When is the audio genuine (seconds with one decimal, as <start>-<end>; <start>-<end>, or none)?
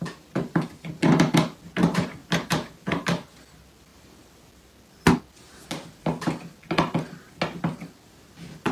0.0-2.2; 3.4-8.7